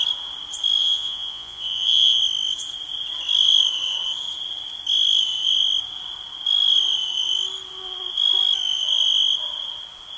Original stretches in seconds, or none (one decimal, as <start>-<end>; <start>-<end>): 0.0-0.8; 2.2-10.2